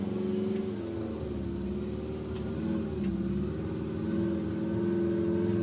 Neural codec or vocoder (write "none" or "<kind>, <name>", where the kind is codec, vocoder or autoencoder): none